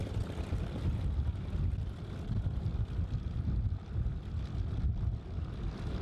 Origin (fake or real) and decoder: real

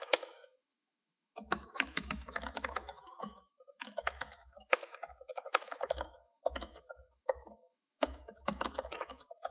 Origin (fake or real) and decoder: fake, autoencoder, DAC-VAE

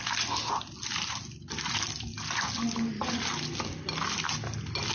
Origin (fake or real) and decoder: real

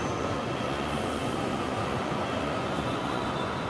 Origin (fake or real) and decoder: fake, vocoder, Vocos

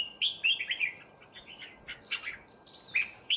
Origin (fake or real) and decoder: real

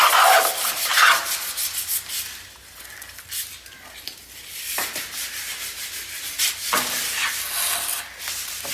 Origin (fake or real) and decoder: real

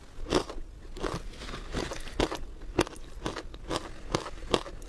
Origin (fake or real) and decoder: real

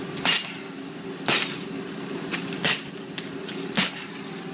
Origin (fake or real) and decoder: real